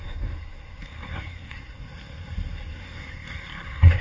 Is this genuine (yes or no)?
no